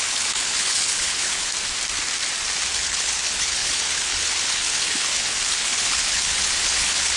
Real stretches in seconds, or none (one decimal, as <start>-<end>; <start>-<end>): 1.5-2.7